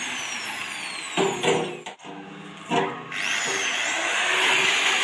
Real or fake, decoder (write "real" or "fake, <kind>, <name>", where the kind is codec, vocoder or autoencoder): real